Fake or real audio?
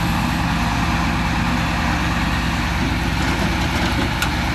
real